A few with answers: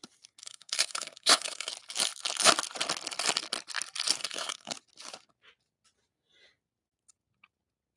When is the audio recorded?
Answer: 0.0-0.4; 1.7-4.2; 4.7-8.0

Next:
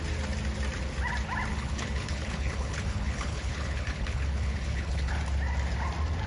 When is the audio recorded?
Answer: 0.0-1.5; 5.2-6.3

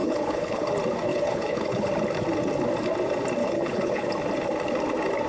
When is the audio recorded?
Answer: 0.7-1.1; 1.9-3.4; 4.1-5.3

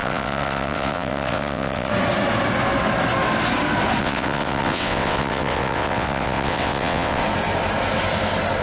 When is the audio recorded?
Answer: 1.9-4.0; 7.2-8.6

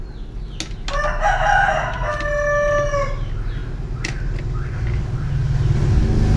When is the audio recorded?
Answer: 0.0-6.4

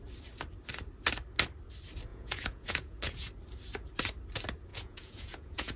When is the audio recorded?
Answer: 0.0-2.1; 3.3-4.7

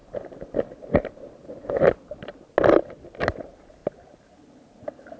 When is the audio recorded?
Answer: 0.0-5.2

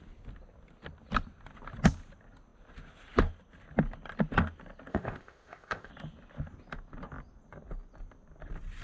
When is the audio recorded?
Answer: 0.0-4.9; 5.9-8.8